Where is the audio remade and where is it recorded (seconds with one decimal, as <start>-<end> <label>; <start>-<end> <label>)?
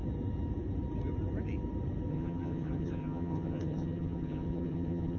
0.0-2.1 recorded; 2.1-5.2 remade